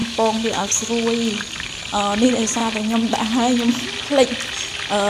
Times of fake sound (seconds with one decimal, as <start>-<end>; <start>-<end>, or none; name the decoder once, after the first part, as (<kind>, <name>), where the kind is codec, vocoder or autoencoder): 0.0-0.9 (autoencoder, DAC-VAE)

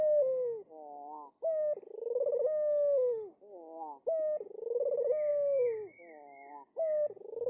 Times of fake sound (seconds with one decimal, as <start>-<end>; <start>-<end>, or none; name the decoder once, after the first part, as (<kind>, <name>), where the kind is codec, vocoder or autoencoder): none

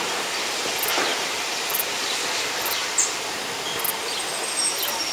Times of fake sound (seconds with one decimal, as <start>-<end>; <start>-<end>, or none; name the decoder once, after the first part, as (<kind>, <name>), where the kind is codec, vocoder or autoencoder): 0.0-2.8 (vocoder, BigVGAN v2); 4.0-5.1

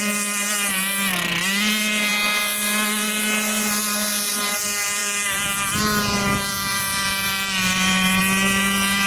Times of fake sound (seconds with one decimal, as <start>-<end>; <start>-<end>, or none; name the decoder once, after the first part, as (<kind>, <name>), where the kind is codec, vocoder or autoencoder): 6.7-8.2 (vocoder, BigVGAN v2)

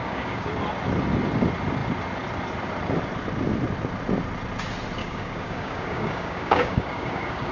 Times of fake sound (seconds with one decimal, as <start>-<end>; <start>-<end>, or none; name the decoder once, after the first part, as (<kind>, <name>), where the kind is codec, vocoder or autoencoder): 0.0-0.5 (codec, DAC); 5.0-7.5